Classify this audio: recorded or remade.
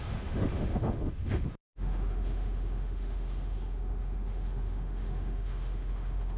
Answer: remade